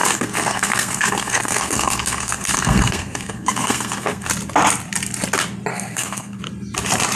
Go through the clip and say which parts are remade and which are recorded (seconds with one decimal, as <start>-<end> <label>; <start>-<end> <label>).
0.0-4.3 remade; 4.3-5.7 recorded; 5.7-6.4 remade; 6.4-7.2 recorded